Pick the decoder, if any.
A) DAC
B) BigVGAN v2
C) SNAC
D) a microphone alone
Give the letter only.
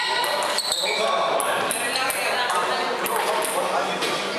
D